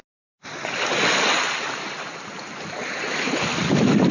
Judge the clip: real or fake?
real